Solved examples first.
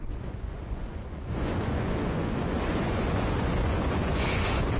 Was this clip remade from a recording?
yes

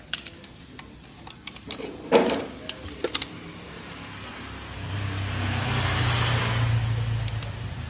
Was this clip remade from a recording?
no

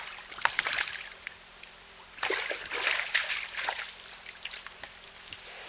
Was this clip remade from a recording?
no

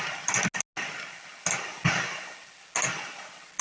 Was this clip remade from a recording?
no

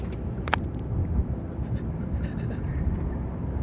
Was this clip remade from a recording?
no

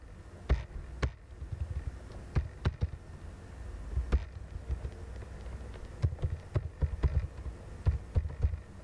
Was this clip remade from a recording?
no